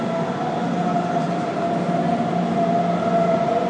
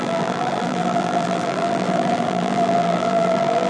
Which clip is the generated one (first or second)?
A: second